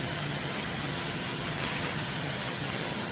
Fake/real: fake